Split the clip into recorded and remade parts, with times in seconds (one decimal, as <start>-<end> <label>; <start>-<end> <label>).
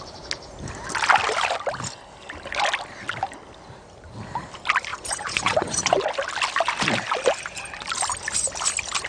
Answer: 0.0-4.9 recorded; 4.9-6.0 remade; 6.0-9.1 recorded